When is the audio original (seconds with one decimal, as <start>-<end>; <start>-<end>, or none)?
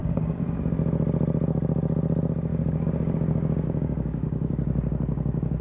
0.6-2.5